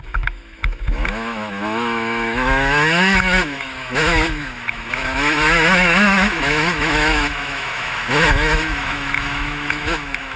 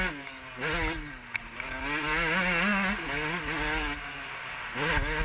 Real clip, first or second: second